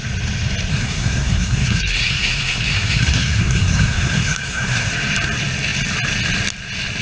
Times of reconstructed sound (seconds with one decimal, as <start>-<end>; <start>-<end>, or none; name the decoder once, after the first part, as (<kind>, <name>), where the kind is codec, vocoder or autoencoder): 0.7-4.9 (codec, SNAC)